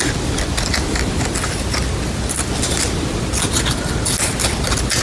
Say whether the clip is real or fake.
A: real